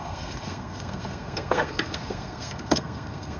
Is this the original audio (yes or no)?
no